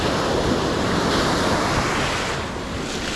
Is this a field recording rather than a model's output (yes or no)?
yes